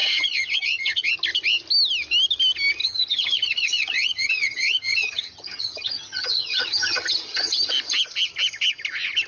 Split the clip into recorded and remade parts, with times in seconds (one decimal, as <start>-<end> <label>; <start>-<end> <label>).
0.0-1.1 remade; 1.1-2.8 recorded; 2.8-7.7 remade; 7.7-9.3 recorded

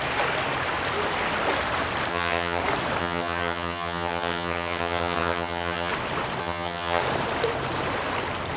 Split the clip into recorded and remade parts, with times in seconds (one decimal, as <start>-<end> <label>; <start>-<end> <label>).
0.0-2.1 recorded; 2.1-2.6 remade; 2.6-3.0 recorded; 3.0-5.9 remade; 5.9-6.4 recorded; 6.4-7.0 remade; 7.0-8.6 recorded

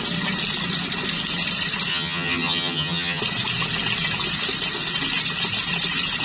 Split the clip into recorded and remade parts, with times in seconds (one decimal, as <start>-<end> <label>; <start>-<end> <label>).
0.0-1.9 recorded; 1.9-3.2 remade; 3.2-6.2 recorded

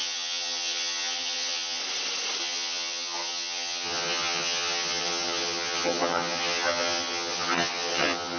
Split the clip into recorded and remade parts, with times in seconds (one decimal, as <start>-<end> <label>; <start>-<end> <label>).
0.0-1.8 remade; 1.8-2.4 recorded; 2.4-8.4 remade

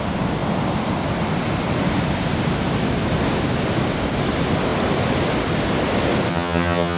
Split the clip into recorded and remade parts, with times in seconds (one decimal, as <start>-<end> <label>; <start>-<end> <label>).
0.0-6.3 recorded; 6.3-7.0 remade

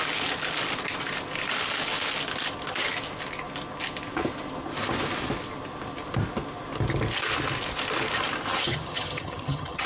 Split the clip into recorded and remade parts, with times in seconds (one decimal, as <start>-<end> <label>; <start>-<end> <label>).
0.0-8.5 recorded; 8.5-9.9 remade